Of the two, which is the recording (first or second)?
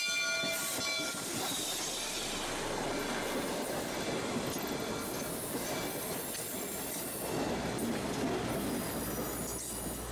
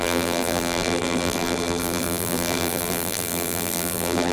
first